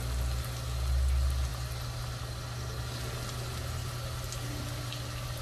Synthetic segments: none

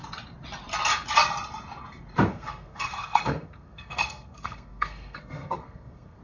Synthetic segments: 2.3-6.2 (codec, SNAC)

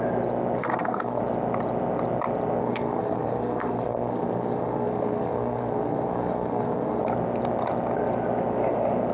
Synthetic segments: 0.6-1.2 (codec, SNAC); 2.6-7.0